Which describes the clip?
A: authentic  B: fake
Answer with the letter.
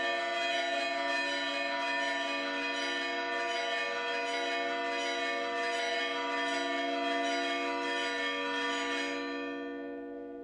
A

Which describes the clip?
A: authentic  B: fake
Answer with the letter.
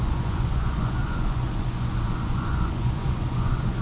B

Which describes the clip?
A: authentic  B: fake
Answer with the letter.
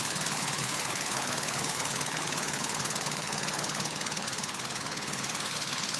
B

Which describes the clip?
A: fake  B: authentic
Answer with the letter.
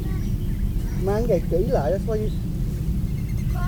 B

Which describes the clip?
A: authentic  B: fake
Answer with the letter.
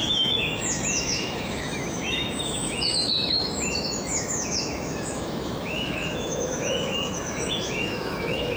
B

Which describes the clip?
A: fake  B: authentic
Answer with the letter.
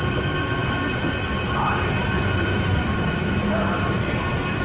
B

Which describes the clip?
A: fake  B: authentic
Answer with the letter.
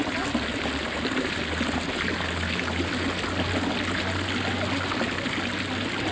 B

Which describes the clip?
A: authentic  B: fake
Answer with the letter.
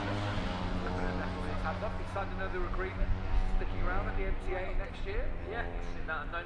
A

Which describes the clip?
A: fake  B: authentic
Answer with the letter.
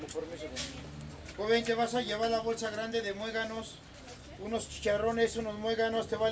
B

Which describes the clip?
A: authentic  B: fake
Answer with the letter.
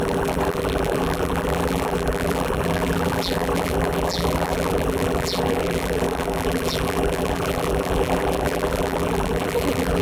B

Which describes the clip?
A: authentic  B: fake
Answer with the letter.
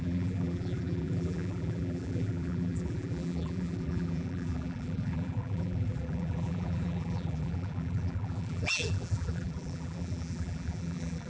B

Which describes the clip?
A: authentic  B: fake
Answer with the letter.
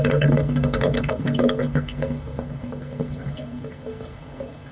B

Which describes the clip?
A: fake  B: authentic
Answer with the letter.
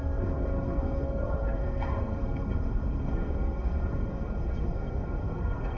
A